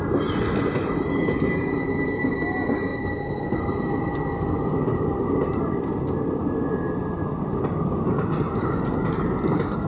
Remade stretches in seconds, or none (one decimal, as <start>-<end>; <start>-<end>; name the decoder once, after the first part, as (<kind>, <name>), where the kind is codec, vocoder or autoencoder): none